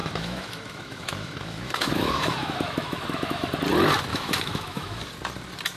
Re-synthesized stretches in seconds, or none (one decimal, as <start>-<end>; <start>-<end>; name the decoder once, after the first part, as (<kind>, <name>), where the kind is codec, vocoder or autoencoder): 0.0-3.5 (autoencoder, DAC-VAE); 4.1-5.0